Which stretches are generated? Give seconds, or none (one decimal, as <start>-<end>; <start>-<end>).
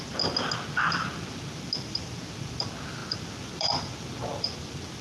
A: none